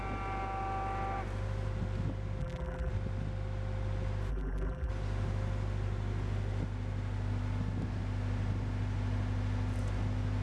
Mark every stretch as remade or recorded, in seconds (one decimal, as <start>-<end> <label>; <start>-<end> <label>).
0.0-2.4 recorded; 2.4-2.9 remade; 2.9-4.3 recorded; 4.3-4.9 remade; 4.9-10.4 recorded

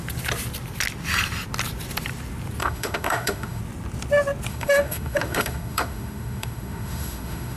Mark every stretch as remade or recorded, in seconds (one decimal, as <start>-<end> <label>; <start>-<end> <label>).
0.0-2.6 recorded; 2.6-3.6 remade; 3.6-4.5 recorded; 4.5-7.6 remade

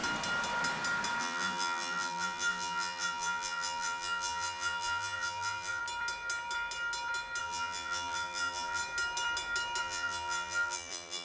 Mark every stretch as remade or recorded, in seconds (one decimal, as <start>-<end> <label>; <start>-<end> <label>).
0.0-1.2 recorded; 1.2-5.8 remade; 5.8-7.4 recorded; 7.4-8.8 remade; 8.8-9.8 recorded; 9.8-11.2 remade

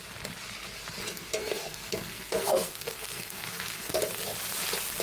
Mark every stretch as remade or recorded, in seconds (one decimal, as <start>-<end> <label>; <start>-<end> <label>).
0.0-1.0 recorded; 1.0-4.0 remade; 4.0-5.0 recorded

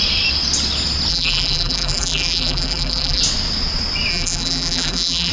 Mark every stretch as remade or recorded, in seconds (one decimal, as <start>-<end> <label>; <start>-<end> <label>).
0.0-1.1 recorded; 1.1-3.2 remade; 3.2-4.1 recorded; 4.1-5.3 remade

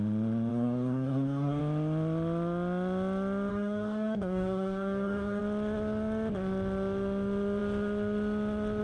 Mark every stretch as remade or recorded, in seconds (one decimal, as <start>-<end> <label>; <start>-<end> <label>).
0.0-0.5 recorded; 0.5-1.6 remade; 1.6-3.5 recorded; 3.5-5.4 remade; 5.4-8.8 recorded